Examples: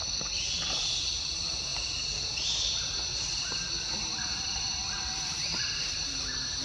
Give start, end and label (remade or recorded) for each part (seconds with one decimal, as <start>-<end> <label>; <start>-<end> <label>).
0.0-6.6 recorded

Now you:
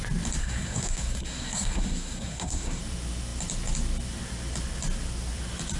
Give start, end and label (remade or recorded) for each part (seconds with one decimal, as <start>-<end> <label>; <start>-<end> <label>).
0.0-0.4 recorded; 0.4-2.8 remade; 2.8-5.8 recorded

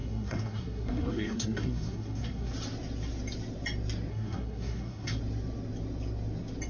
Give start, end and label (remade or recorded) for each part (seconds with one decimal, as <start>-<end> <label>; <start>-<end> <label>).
0.0-2.5 remade; 2.5-4.1 recorded; 4.1-5.2 remade; 5.2-6.7 recorded

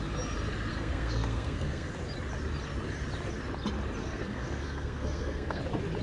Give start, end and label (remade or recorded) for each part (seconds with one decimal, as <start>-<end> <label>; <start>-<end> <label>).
0.0-0.7 recorded; 0.7-1.9 remade; 1.9-4.0 recorded; 4.0-5.6 remade; 5.6-6.0 recorded

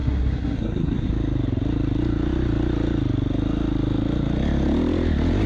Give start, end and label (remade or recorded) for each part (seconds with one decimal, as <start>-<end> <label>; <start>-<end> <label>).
0.0-1.1 remade; 1.1-5.5 recorded

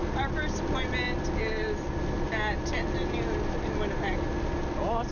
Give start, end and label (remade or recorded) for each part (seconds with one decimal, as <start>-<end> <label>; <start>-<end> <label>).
0.0-5.1 recorded

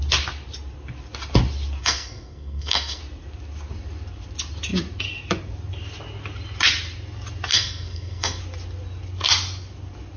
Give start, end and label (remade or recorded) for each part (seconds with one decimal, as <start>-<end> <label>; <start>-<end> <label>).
0.0-1.8 recorded; 1.8-3.0 remade; 3.0-7.5 recorded; 7.5-8.4 remade; 8.4-10.2 recorded

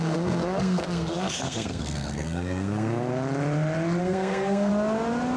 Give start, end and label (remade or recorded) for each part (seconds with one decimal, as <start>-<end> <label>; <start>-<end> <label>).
0.0-3.1 remade; 3.1-4.0 recorded; 4.0-4.7 remade; 4.7-5.4 recorded